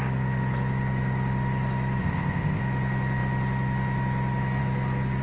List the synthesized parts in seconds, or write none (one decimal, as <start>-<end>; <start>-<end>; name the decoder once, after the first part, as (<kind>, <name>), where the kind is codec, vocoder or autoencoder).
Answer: 2.0-2.6 (codec, ZipCodec)